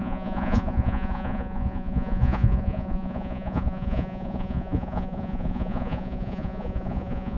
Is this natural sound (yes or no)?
no